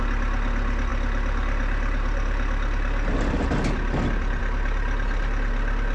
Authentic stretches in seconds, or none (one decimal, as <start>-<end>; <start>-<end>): 0.0-5.9